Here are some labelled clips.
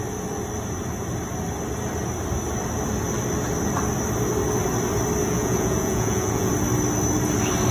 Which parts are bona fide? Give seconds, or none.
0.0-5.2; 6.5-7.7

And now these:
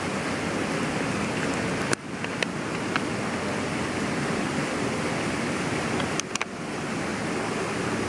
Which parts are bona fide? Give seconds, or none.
0.0-8.1

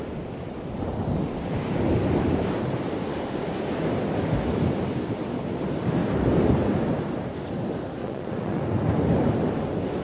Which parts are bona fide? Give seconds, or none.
0.0-8.0; 8.6-10.0

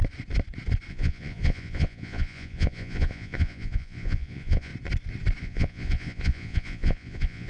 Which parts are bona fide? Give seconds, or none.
0.0-0.9; 4.7-5.4

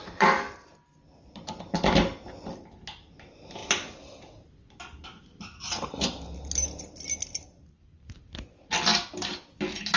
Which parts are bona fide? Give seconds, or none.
0.0-10.0